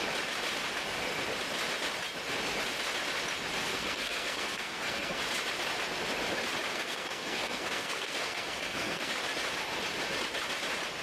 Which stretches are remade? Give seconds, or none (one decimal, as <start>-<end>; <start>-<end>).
3.6-5.2; 6.7-9.1

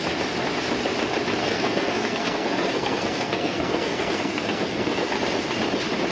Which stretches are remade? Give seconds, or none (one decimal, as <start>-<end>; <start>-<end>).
1.4-5.1